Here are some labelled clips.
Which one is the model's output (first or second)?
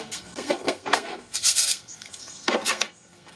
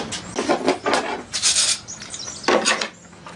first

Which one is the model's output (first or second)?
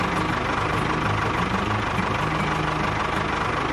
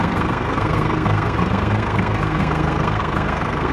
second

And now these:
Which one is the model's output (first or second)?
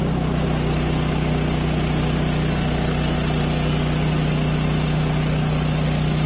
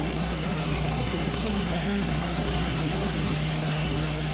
second